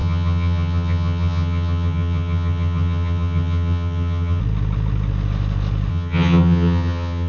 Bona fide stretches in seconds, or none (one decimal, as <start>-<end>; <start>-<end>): 4.4-5.9

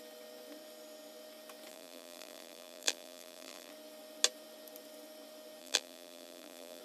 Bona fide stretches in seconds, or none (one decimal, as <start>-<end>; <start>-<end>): 0.0-1.7; 3.7-5.6

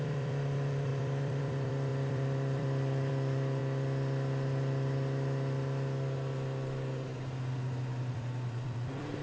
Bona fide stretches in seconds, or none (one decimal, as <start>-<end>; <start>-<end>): 3.6-8.1